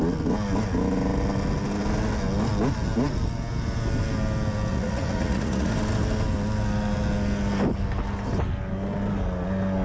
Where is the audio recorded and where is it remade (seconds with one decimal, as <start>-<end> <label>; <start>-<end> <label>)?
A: 0.0-4.7 recorded; 4.7-5.7 remade; 5.7-9.8 recorded